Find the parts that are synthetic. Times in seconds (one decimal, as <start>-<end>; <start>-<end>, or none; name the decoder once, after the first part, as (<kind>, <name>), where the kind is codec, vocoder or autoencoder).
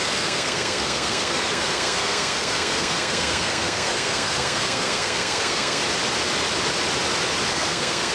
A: 0.0-5.8 (codec, SNAC); 7.5-8.1